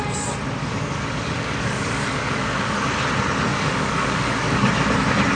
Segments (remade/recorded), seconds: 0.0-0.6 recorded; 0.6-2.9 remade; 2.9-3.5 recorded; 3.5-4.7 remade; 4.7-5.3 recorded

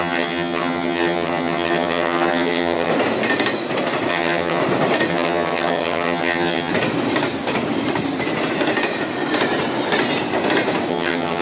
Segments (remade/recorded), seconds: 0.0-2.9 remade; 2.9-4.1 recorded; 4.1-4.6 remade; 4.6-5.1 recorded; 5.1-6.7 remade; 6.7-10.9 recorded; 10.9-11.4 remade

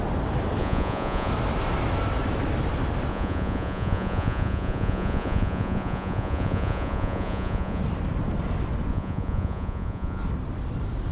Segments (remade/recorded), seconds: 0.0-0.6 recorded; 0.6-1.3 remade; 1.3-3.1 recorded; 3.1-7.8 remade; 7.8-8.9 recorded; 8.9-10.2 remade; 10.2-11.1 recorded